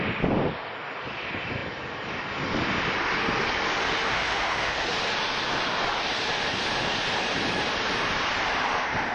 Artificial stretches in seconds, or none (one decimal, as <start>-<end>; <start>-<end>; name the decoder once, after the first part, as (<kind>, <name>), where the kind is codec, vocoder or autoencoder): 4.1-4.9 (autoencoder, DAC-VAE)